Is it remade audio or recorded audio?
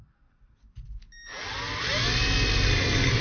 recorded